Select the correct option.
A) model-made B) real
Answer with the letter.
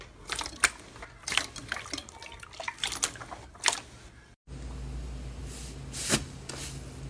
B